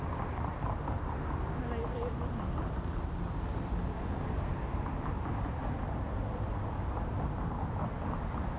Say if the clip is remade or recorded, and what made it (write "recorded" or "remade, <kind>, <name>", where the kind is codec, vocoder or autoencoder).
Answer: recorded